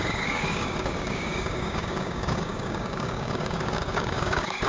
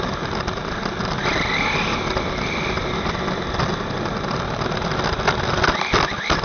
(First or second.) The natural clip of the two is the second